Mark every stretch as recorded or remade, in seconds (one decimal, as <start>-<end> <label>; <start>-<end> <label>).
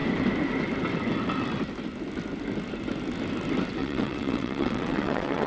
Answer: 0.0-3.8 recorded; 3.8-5.5 remade